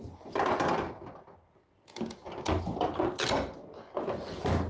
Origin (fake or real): real